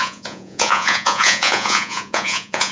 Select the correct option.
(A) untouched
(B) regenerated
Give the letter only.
B